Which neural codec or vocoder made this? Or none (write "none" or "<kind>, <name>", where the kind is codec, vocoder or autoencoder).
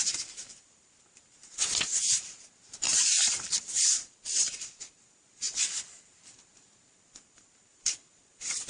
vocoder, BigVGAN v2